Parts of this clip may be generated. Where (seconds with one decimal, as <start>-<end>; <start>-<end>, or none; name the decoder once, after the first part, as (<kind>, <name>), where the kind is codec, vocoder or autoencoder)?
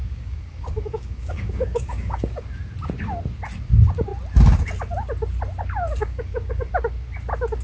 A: 0.0-2.4 (codec, DAC); 6.0-6.7